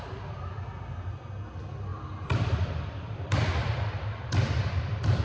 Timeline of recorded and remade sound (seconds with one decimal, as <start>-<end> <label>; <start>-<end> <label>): 0.0-1.9 recorded; 1.9-5.2 remade